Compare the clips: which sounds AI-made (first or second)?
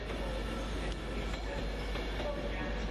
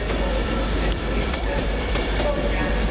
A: second